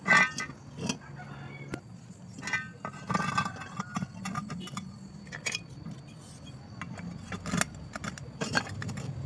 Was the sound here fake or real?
real